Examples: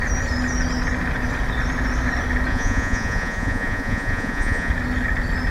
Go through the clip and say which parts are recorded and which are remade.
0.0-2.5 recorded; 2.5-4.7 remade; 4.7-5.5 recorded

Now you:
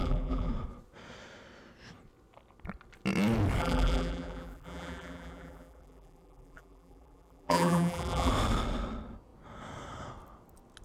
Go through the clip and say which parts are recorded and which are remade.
0.0-0.5 remade; 0.5-3.6 recorded; 3.6-8.3 remade; 8.3-10.8 recorded

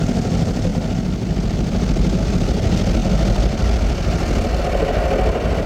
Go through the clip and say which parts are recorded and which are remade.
0.0-5.7 recorded